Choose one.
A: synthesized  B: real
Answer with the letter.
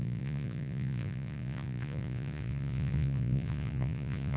A